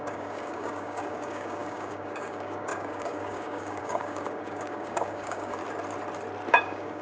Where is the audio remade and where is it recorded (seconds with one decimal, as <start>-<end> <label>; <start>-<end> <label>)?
0.0-5.6 remade; 5.6-6.5 recorded; 6.5-7.0 remade